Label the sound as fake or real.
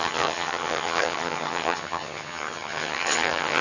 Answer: fake